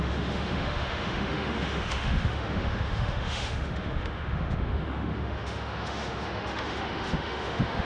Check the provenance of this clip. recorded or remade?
remade